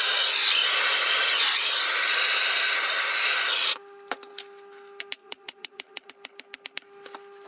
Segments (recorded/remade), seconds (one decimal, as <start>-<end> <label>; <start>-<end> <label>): 0.0-5.2 recorded; 5.2-6.1 remade; 6.1-7.5 recorded